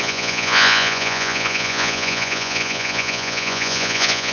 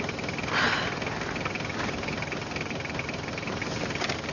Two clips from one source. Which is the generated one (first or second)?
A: first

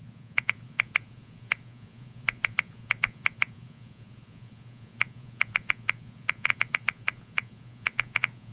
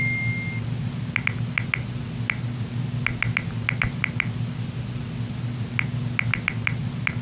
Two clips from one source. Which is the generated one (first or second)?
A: first